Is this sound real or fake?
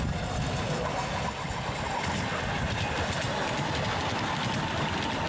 real